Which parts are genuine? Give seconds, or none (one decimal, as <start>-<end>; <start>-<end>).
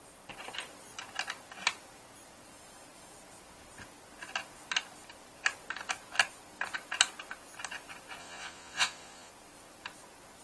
0.0-8.2; 9.3-10.4